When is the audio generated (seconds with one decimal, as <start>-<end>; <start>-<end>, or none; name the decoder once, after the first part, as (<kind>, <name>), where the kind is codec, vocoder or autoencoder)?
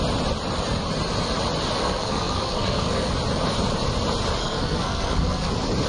1.8-3.1 (codec, SNAC); 4.4-5.5